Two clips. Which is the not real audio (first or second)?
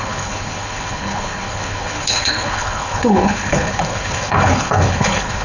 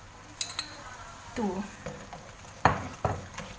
first